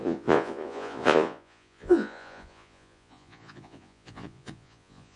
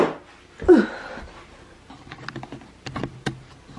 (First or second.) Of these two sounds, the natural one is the second